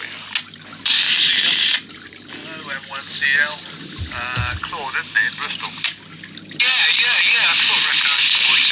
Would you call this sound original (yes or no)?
yes